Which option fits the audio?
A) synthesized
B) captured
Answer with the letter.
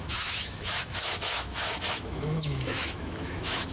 A